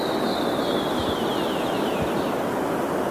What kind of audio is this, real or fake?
real